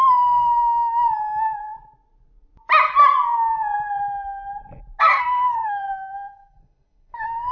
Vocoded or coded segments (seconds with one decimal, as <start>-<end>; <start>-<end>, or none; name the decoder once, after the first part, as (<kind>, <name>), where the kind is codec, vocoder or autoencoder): 0.0-0.5 (codec, SNAC); 5.0-7.5